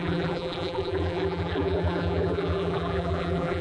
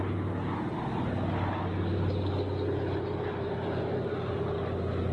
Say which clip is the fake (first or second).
first